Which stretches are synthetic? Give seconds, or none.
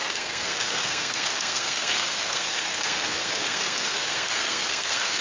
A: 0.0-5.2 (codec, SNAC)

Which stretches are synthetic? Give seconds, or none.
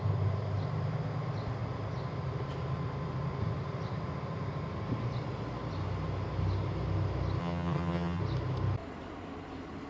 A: 7.4-8.2 (vocoder, HiFi-GAN)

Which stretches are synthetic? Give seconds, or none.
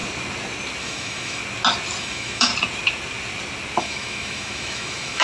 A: 0.8-1.4 (autoencoder, DAC-VAE); 2.0-2.5; 3.8-5.2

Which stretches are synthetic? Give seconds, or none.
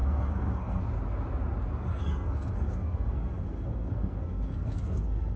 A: 0.0-0.8 (codec, SNAC); 1.9-5.4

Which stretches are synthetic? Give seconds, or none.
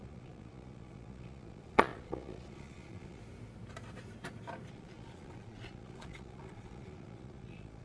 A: 0.0-3.2 (vocoder, Vocos); 4.7-7.8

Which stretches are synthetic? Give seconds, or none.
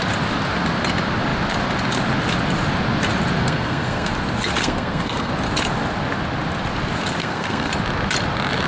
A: 3.4-4.1 (codec, SNAC); 4.6-5.3; 7.2-7.7